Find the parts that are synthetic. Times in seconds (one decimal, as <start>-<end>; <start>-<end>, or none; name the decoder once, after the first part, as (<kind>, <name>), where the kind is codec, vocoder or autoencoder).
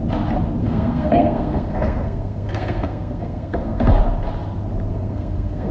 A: 0.6-4.0 (codec, SNAC); 4.9-5.7